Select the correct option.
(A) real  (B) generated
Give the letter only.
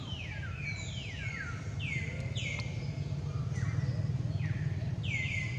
A